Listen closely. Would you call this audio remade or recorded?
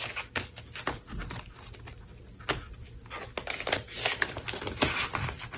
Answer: recorded